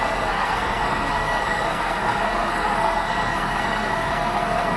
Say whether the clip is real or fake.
fake